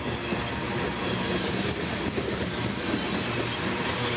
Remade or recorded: recorded